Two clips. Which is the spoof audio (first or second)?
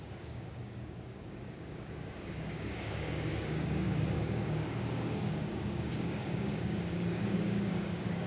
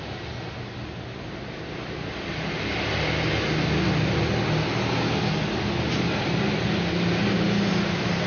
first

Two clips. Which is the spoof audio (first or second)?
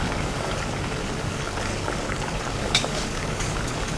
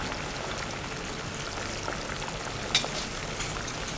first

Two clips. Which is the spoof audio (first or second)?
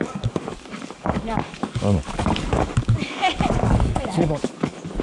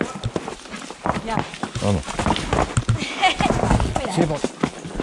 first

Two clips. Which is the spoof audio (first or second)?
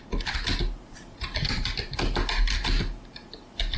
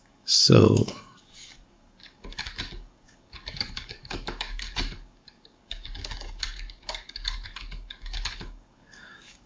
second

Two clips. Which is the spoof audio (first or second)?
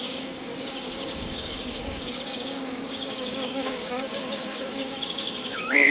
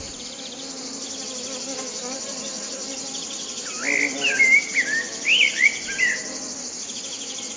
first